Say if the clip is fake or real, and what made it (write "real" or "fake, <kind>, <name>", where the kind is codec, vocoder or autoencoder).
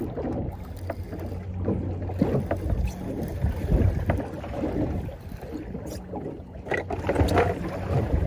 real